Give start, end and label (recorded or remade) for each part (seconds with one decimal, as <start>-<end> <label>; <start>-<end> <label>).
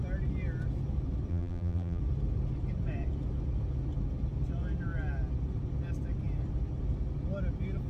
0.0-1.3 recorded; 1.3-2.0 remade; 2.0-7.9 recorded